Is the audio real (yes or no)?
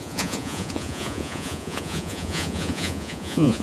no